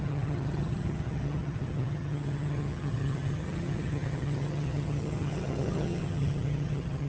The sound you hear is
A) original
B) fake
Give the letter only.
B